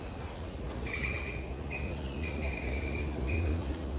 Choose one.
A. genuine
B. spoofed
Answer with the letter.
B